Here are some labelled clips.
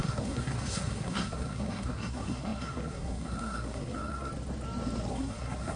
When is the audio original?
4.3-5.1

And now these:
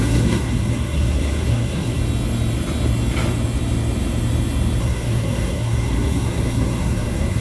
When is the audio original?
2.0-4.8

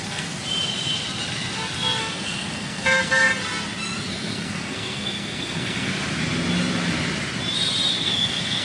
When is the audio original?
0.4-2.0; 3.3-4.1; 5.9-8.0

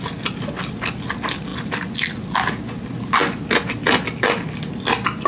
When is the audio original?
0.0-5.3

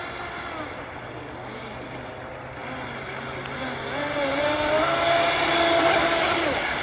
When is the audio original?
0.0-6.8

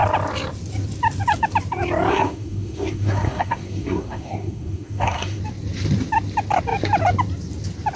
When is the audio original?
0.0-2.1; 5.4-8.0

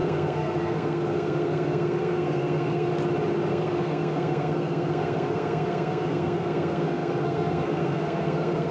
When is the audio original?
2.9-3.5